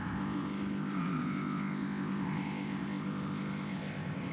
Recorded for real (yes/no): no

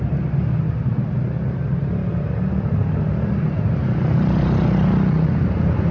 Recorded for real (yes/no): yes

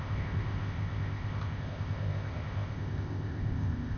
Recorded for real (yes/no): no